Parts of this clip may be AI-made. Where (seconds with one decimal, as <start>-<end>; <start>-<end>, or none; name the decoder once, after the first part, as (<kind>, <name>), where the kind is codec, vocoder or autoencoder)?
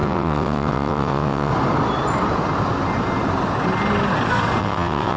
0.0-1.5 (vocoder, WaveNeXt); 4.6-5.2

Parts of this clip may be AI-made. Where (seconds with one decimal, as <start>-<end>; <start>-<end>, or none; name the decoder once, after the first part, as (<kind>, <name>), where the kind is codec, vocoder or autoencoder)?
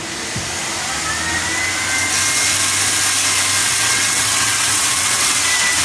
3.6-5.8 (vocoder, WaveNeXt)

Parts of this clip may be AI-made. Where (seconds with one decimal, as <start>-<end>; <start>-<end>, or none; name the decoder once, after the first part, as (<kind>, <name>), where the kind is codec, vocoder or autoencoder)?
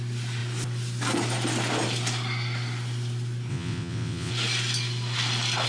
3.5-4.3 (vocoder, WaveNeXt)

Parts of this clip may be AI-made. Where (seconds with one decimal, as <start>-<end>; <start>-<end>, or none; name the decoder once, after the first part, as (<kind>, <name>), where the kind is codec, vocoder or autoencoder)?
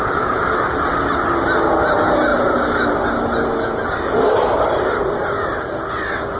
none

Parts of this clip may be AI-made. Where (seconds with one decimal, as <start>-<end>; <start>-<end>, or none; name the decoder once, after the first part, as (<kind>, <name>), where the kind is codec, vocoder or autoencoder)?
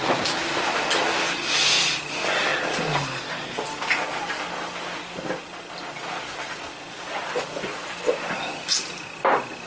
none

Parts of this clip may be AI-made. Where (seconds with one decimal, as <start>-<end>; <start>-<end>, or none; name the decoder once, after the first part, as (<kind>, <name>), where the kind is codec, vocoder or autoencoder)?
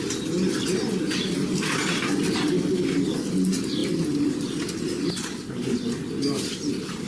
none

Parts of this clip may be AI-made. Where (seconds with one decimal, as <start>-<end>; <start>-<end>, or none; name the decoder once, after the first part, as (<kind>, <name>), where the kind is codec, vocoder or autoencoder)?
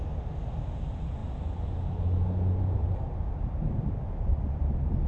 none